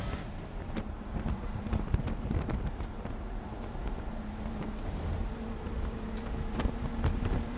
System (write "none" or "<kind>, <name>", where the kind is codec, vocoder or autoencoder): vocoder, BigVGAN v2